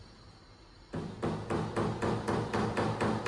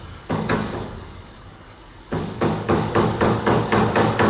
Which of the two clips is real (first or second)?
first